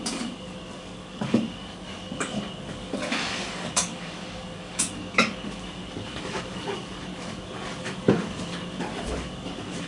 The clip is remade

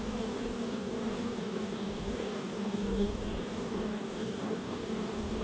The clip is remade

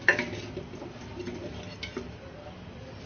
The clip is recorded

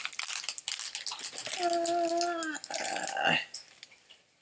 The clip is recorded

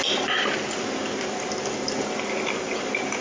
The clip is recorded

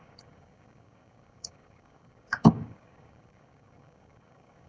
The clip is remade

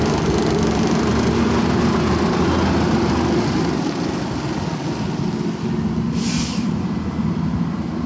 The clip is recorded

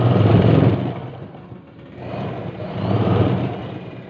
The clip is recorded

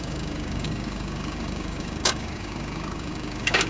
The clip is remade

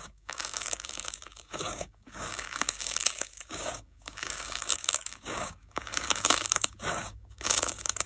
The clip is remade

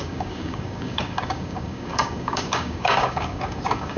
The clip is remade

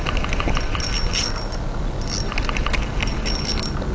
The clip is recorded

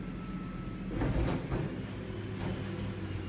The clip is recorded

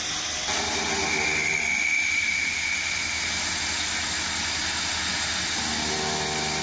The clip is recorded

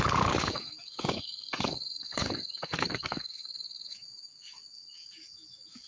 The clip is remade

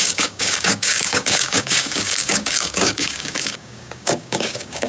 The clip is remade